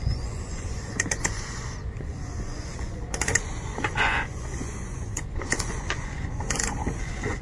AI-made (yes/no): yes